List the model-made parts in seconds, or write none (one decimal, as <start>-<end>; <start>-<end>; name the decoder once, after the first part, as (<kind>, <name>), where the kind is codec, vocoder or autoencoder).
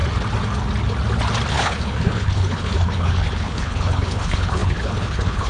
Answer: 1.5-5.5 (codec, HILCodec)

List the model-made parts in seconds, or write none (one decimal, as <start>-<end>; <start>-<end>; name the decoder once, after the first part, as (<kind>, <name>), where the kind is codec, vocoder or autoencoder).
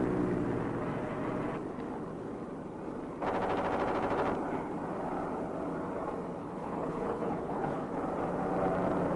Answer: 6.4-7.9 (codec, HILCodec)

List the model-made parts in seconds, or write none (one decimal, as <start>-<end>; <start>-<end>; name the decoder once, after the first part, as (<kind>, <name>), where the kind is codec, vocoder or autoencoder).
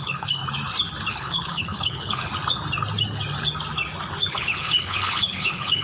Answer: 0.0-0.4 (codec, HILCodec); 1.1-2.3; 4.3-5.8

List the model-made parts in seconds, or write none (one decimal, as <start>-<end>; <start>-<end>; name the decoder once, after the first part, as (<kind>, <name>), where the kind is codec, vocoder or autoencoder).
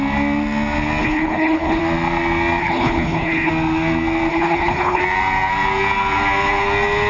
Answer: 1.0-1.8 (codec, HILCodec); 2.6-3.5; 4.3-5.0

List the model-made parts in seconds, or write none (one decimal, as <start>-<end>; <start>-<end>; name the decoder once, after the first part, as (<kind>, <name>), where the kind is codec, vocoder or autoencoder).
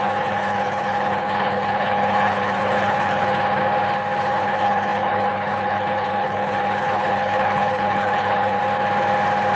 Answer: 0.0-3.6 (codec, HILCodec); 4.2-8.6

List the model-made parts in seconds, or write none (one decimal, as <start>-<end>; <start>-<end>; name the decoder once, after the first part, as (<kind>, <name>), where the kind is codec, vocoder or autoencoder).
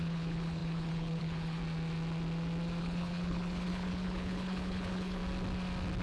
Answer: 0.0-1.6 (codec, HILCodec); 2.8-5.2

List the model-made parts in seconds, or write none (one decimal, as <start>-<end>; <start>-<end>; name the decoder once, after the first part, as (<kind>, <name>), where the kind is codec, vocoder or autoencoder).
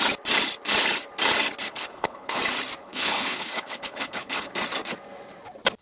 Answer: 1.7-2.4 (codec, HILCodec); 2.8-4.5